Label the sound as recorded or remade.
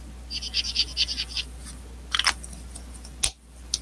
recorded